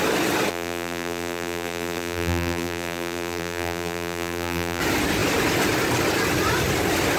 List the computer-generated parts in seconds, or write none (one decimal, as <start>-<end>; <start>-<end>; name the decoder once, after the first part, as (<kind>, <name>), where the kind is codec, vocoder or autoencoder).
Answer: 0.5-4.8 (vocoder, BigVGAN v2)